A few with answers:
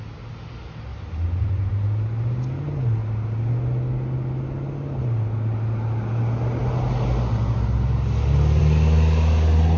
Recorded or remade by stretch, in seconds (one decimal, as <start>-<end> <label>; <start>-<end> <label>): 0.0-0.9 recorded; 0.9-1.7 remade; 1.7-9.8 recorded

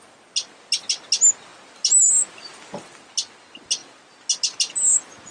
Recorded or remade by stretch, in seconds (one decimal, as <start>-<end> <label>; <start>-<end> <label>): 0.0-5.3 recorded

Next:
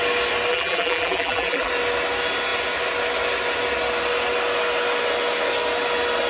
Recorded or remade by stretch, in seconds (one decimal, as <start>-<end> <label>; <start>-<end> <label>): 0.0-0.5 recorded; 0.5-1.7 remade; 1.7-6.3 recorded